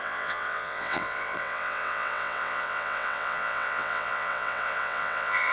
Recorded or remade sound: remade